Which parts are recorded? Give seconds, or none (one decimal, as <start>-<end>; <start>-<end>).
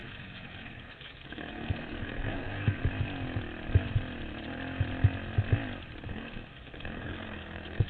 2.8-6.1